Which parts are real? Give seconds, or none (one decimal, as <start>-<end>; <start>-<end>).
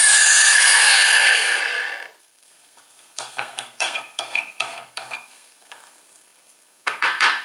1.6-2.2